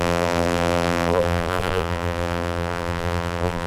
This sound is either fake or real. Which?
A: fake